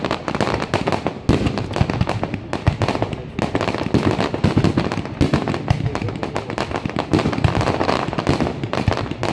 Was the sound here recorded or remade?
recorded